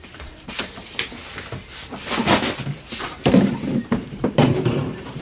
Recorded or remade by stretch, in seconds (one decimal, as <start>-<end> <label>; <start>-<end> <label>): 0.0-1.2 remade; 1.2-3.0 recorded; 3.0-5.2 remade